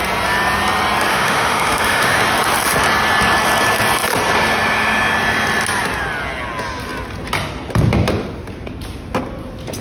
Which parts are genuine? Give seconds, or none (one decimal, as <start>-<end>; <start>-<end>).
0.0-1.1; 2.2-9.8